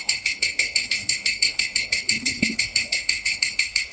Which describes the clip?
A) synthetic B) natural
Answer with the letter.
A